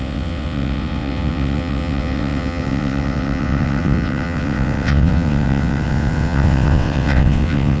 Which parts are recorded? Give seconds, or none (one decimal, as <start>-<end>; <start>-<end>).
none